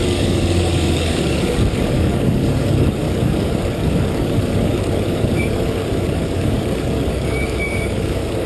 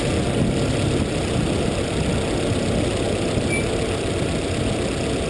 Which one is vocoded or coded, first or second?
first